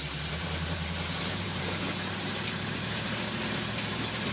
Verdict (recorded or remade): remade